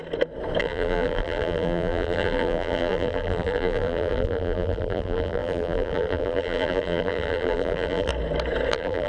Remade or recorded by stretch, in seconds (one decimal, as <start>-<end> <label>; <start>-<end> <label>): 0.0-0.6 recorded; 0.6-8.1 remade; 8.1-8.7 recorded; 8.7-9.1 remade